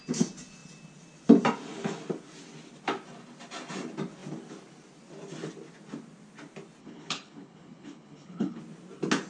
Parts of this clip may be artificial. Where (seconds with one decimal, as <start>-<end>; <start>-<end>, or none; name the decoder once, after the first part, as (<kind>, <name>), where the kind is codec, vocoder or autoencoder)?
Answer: 6.8-8.6 (codec, HILCodec)